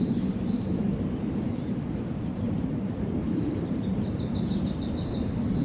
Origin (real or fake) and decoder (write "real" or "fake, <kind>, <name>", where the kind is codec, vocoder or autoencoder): fake, vocoder, BigVGAN v2